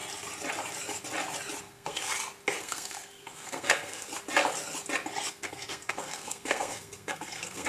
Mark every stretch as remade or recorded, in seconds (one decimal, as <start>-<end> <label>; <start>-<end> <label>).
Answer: 0.0-1.6 recorded; 1.6-2.1 remade; 2.1-2.6 recorded; 2.6-4.1 remade; 4.1-5.3 recorded; 5.3-7.7 remade